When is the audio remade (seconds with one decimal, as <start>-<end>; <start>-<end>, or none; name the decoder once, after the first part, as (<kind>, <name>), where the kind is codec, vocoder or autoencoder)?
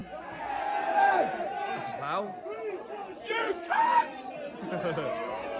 3.0-4.3 (vocoder, Vocos)